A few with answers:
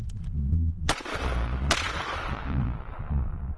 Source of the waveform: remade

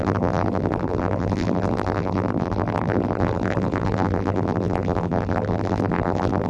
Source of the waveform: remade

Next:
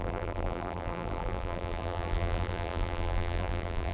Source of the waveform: remade